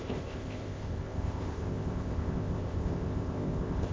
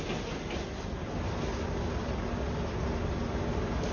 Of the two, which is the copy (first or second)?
first